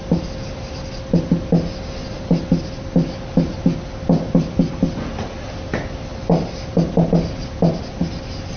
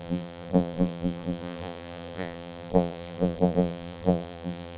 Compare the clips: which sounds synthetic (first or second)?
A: second